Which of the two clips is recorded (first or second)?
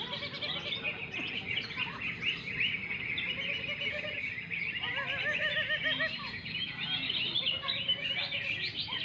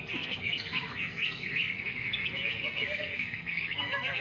first